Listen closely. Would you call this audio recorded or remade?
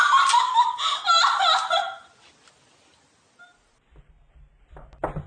recorded